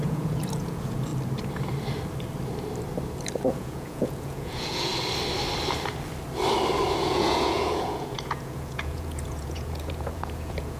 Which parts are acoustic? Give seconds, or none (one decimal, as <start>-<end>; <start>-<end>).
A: 1.1-3.4; 4.9-7.0